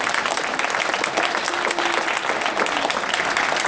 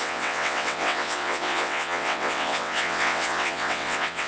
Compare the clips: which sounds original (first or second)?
first